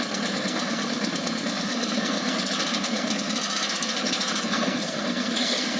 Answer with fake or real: fake